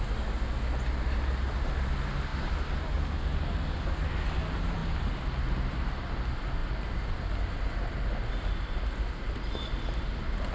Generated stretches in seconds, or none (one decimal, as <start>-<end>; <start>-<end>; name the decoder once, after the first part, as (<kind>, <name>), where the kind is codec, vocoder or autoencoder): none